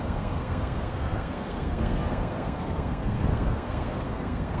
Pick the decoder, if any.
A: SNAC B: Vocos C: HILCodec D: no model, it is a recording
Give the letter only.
A